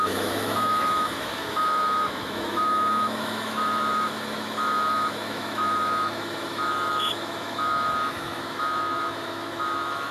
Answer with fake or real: fake